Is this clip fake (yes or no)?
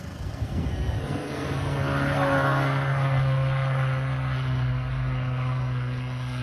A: yes